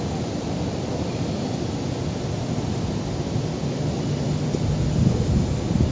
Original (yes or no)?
yes